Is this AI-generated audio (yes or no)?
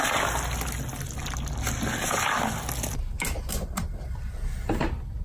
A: no